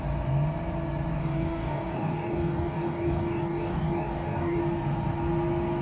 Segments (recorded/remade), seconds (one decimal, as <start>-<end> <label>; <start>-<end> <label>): 0.0-1.2 recorded; 1.2-4.6 remade; 4.6-5.8 recorded